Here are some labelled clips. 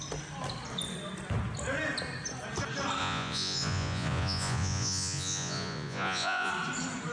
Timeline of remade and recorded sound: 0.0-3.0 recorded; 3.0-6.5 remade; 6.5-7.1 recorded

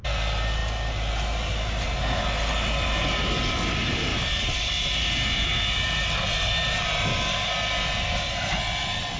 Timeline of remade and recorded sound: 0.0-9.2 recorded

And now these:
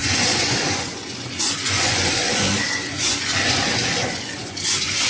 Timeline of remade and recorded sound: 0.0-5.1 remade

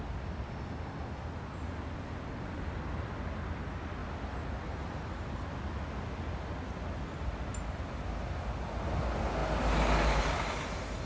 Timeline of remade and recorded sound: 0.0-11.1 recorded